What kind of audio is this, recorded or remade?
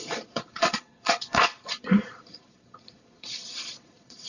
remade